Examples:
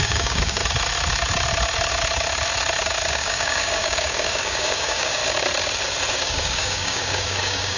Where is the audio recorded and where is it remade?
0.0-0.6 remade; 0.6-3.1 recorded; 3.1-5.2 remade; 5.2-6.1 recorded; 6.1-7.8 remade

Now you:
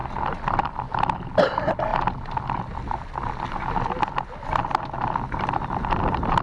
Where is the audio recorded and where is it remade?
0.0-6.4 recorded

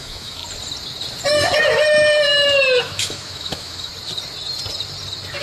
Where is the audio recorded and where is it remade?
0.0-0.4 remade; 0.4-2.8 recorded; 2.8-3.9 remade; 3.9-5.4 recorded

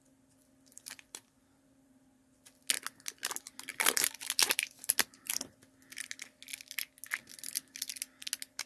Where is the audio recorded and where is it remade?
0.0-0.7 recorded; 0.7-2.2 remade; 2.2-3.7 recorded; 3.7-5.3 remade; 5.3-8.7 recorded

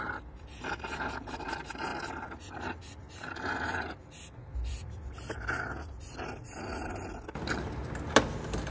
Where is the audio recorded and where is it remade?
0.0-8.7 recorded

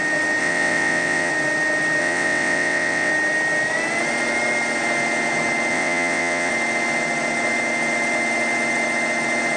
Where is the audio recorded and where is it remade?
0.0-0.4 recorded; 0.4-1.3 remade; 1.3-2.0 recorded; 2.0-3.1 remade; 3.1-5.7 recorded; 5.7-6.5 remade; 6.5-9.6 recorded